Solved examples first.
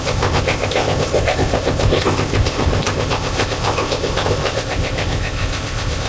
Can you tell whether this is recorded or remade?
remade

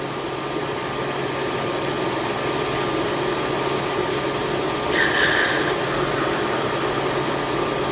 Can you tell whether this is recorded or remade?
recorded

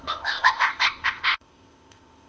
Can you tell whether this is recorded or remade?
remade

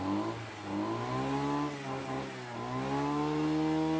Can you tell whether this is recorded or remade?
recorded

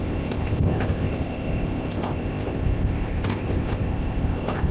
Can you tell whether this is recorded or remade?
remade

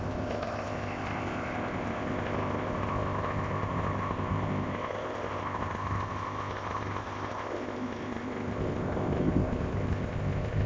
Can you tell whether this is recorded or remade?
remade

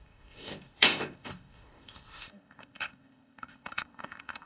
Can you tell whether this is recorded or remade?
remade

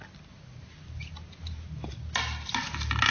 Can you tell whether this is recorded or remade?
recorded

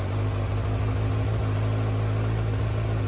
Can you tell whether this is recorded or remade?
recorded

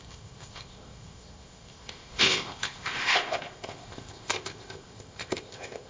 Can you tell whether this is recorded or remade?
remade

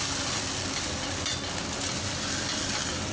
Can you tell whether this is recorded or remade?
recorded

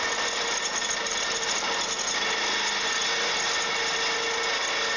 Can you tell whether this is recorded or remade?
recorded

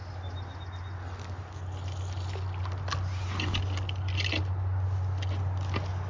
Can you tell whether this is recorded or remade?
recorded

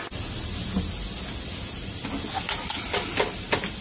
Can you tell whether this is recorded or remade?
recorded